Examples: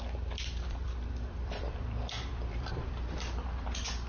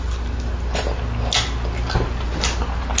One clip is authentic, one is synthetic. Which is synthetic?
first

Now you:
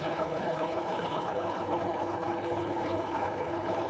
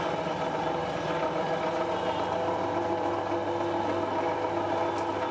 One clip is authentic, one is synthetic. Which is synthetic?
first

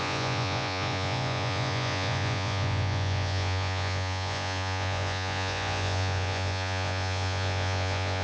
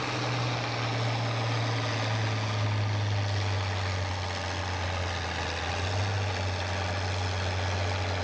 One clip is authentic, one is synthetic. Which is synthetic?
first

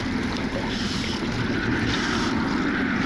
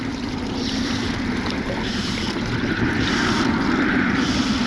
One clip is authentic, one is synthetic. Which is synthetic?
second